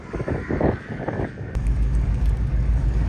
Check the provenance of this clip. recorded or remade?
remade